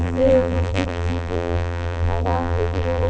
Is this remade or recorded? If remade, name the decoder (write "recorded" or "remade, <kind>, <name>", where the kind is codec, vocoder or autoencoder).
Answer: remade, vocoder, BigVGAN v2